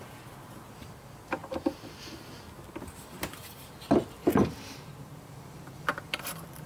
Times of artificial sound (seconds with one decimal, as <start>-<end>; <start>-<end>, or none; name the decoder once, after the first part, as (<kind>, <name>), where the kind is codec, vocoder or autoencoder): 4.2-6.7 (vocoder, BigVGAN v2)